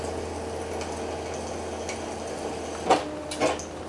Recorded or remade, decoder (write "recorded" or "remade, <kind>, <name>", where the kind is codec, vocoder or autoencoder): recorded